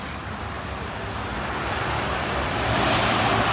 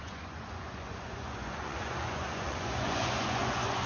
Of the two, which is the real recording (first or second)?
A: first